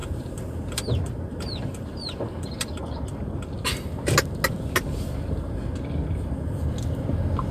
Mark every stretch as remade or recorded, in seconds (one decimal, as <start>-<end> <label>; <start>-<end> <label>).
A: 0.0-2.8 remade; 2.8-7.5 recorded